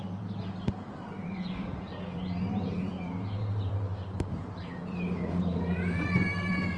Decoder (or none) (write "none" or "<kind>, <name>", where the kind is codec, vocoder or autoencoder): vocoder, BigVGAN v2